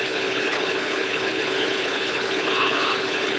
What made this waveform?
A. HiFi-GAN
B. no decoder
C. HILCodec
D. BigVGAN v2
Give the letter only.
C